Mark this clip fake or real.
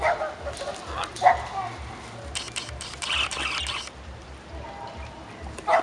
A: real